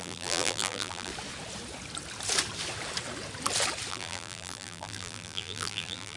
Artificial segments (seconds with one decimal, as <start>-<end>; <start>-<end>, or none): 0.0-1.1; 3.9-6.2